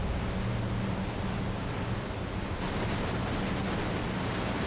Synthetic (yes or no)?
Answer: no